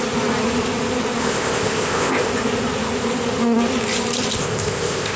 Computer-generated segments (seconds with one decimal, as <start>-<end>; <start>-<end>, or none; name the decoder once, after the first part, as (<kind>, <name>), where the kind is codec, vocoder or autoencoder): 1.2-2.3 (codec, ZipCodec); 4.4-5.2